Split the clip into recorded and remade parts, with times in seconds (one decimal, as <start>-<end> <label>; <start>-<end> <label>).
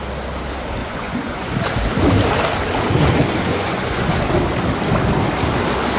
0.0-0.8 recorded; 0.8-1.5 remade; 1.5-3.5 recorded; 3.5-4.2 remade; 4.2-6.0 recorded